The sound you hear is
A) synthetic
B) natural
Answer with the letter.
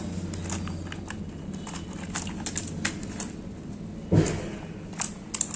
B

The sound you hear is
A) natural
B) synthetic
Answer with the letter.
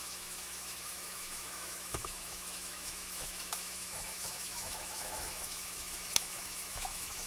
B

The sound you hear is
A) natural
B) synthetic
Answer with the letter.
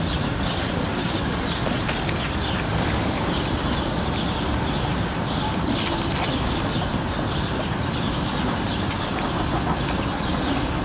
A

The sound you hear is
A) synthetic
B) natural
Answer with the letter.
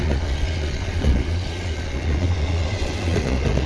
A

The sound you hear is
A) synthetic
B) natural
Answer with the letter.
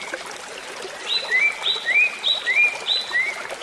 B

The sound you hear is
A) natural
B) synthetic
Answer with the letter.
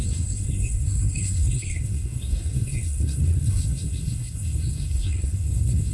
B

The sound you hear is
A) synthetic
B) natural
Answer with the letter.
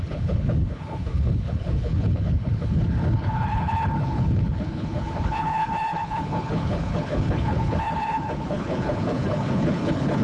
A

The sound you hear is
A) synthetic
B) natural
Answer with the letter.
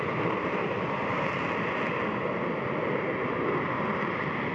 B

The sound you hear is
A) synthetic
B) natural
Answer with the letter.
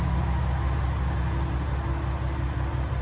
B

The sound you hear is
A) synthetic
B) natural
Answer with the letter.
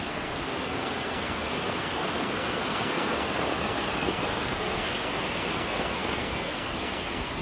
A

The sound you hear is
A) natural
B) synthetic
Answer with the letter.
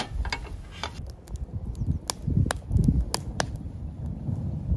A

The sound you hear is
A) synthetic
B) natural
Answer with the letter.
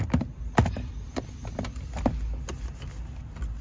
B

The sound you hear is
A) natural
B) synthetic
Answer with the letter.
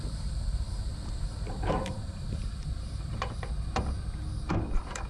B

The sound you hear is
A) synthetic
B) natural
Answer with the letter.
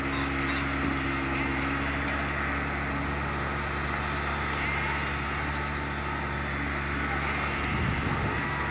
B